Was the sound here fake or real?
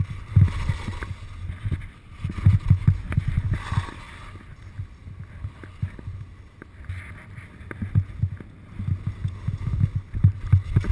real